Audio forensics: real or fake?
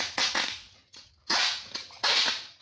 fake